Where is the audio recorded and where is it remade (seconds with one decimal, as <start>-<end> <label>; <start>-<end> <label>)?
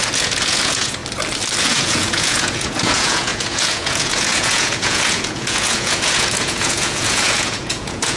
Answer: 0.0-1.0 remade; 1.0-1.6 recorded; 1.6-8.2 remade